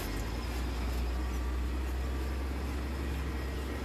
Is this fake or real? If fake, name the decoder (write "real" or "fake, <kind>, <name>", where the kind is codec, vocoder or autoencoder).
real